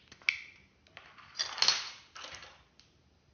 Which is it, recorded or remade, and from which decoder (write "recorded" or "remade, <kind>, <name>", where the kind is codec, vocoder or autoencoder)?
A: recorded